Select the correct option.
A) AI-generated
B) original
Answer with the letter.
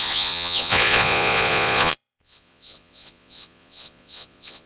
A